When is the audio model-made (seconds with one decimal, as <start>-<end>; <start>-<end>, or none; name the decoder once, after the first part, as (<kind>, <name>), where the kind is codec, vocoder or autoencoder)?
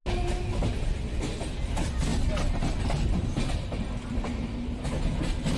none